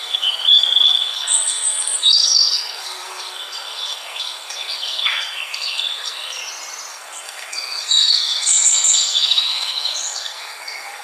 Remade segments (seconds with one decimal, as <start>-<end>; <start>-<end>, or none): 0.0-6.4; 6.9-11.0